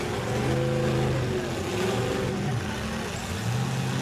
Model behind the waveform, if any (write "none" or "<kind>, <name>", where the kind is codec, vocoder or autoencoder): none